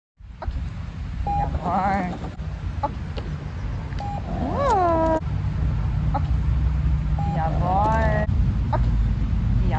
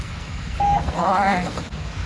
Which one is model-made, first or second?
second